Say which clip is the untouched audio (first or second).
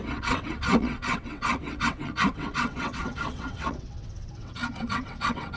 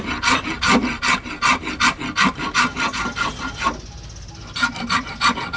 second